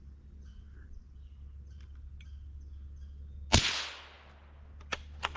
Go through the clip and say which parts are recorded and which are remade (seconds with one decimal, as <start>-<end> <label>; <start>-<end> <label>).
0.0-5.4 recorded